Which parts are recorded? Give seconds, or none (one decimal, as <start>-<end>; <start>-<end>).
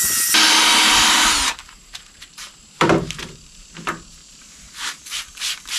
0.0-0.7; 3.7-4.2; 5.0-5.8